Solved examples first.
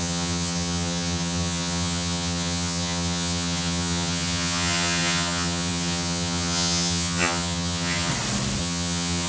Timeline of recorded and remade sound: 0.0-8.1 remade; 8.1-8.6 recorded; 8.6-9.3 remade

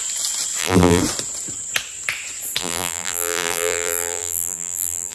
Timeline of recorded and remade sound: 0.0-0.6 recorded; 0.6-1.0 remade; 1.0-2.6 recorded; 2.6-5.1 remade